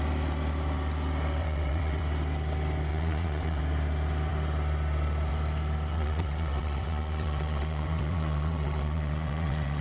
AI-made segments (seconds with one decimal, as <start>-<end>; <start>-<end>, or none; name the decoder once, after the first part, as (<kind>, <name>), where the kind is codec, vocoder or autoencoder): 1.4-2.0 (vocoder, WaveNeXt); 2.9-3.6; 5.9-9.8